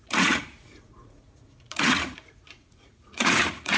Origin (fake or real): fake